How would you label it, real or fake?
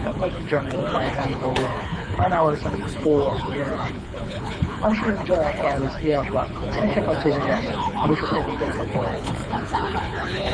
fake